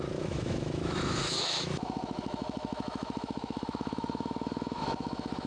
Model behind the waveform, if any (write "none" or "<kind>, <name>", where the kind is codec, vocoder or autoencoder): autoencoder, DAC-VAE